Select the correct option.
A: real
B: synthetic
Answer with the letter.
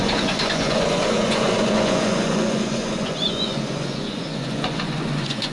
B